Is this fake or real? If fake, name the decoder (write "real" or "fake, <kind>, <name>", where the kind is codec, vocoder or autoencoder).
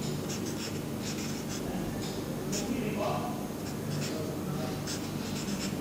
real